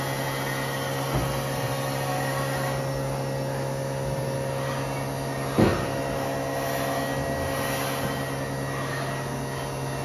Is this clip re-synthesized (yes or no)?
no